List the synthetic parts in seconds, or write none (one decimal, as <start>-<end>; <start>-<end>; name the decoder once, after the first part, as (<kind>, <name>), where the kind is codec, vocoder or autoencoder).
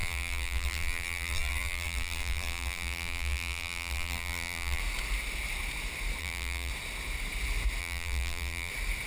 0.0-4.8 (vocoder, BigVGAN v2); 6.2-6.7; 7.8-8.7